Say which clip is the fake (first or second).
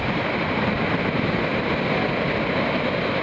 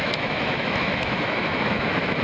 second